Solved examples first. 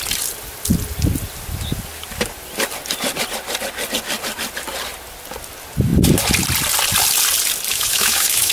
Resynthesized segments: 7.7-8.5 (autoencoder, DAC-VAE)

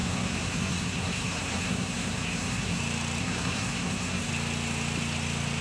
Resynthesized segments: 0.0-2.8 (codec, SNAC); 3.2-4.3

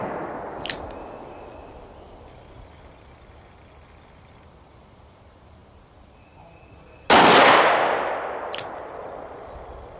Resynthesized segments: none

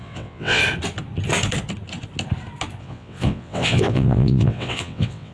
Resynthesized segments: 0.0-0.6 (vocoder, WaveNeXt); 2.8-5.3